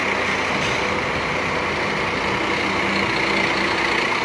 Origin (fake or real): real